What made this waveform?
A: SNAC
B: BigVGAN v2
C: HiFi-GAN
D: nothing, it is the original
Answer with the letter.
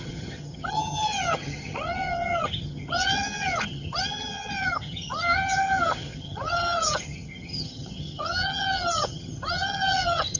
C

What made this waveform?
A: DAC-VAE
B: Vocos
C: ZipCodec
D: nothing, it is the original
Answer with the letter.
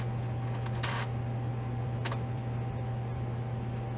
D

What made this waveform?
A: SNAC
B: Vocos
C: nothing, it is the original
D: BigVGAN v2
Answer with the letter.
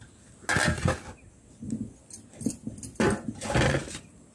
C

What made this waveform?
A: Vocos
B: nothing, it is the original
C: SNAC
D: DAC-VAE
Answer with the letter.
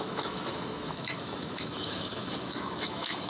D